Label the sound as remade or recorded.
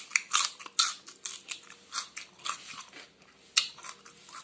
recorded